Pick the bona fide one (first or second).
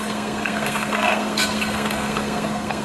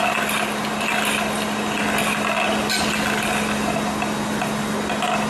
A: second